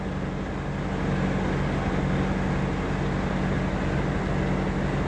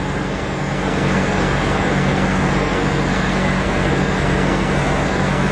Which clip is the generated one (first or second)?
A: second